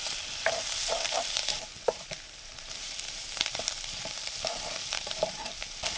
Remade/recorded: remade